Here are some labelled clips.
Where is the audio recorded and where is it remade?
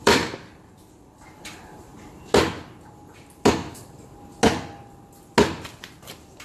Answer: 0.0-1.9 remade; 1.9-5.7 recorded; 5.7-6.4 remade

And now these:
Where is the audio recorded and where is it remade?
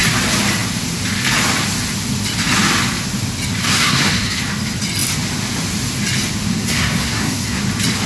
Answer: 0.0-3.6 recorded; 3.6-4.4 remade; 4.4-6.5 recorded; 6.5-7.6 remade; 7.6-8.1 recorded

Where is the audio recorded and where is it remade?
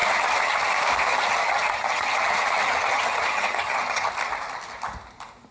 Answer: 0.0-0.7 remade; 0.7-1.1 recorded; 1.1-4.1 remade; 4.1-5.5 recorded